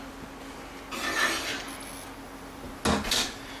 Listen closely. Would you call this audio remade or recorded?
recorded